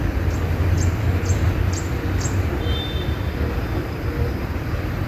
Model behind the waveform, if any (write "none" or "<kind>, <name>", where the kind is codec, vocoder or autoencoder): vocoder, BigVGAN v2